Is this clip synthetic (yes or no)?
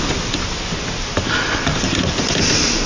no